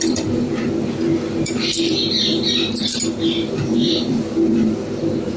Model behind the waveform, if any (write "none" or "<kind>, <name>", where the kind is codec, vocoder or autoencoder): vocoder, BigVGAN v2